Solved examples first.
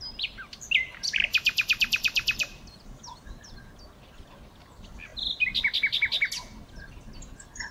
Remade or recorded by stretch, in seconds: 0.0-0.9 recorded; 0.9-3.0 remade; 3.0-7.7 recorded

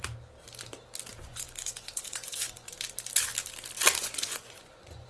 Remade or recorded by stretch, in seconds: 0.0-1.1 recorded; 1.1-2.7 remade; 2.7-4.0 recorded; 4.0-5.1 remade

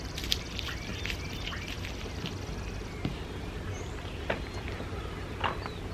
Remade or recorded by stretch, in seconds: 0.0-5.9 recorded

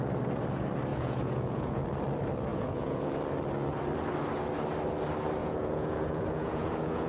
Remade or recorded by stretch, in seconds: 0.0-0.9 recorded; 0.9-1.8 remade; 1.8-2.5 recorded; 2.5-3.1 remade; 3.1-5.4 recorded; 5.4-7.1 remade

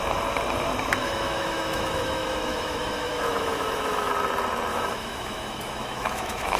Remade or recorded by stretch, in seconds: 0.0-1.0 recorded; 1.0-4.1 remade; 4.1-4.7 recorded; 4.7-6.6 remade

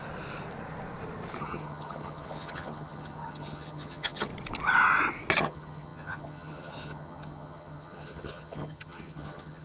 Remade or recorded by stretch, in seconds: 0.0-1.4 recorded; 1.4-4.3 remade; 4.3-5.4 recorded; 5.4-9.6 remade

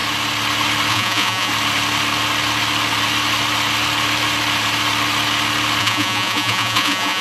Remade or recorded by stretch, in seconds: 0.0-0.9 recorded; 0.9-1.5 remade; 1.5-5.8 recorded; 5.8-7.2 remade